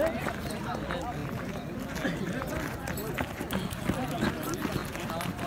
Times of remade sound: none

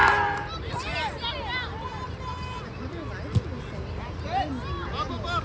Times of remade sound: 0.0-0.7 (vocoder, BigVGAN v2)